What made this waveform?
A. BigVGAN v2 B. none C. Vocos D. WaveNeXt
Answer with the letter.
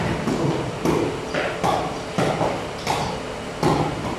B